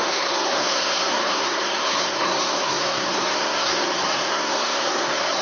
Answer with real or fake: fake